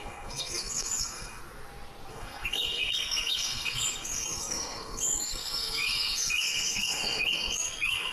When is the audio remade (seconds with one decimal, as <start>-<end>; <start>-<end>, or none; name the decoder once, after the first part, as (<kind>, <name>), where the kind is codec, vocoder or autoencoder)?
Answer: 0.0-1.4 (codec, SNAC); 2.1-8.1